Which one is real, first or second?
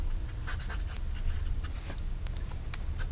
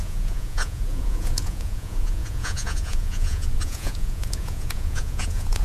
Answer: first